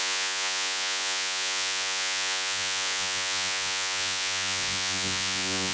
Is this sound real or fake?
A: fake